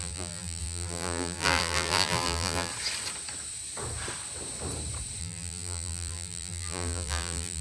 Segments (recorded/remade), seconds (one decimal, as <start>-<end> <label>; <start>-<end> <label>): 0.0-2.7 remade; 2.7-5.2 recorded; 5.2-7.6 remade